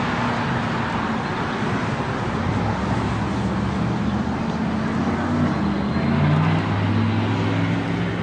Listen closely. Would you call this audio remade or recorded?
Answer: recorded